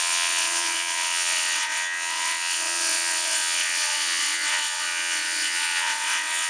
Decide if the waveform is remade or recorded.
remade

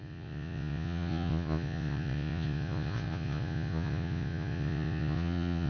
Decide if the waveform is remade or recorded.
remade